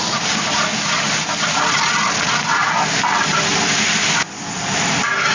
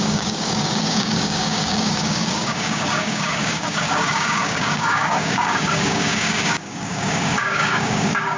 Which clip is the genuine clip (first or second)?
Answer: first